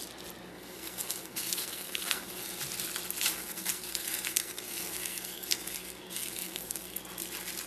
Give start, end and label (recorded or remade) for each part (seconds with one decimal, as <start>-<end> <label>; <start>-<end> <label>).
0.0-0.5 recorded; 0.5-2.6 remade; 2.6-3.3 recorded; 3.3-7.0 remade; 7.0-7.7 recorded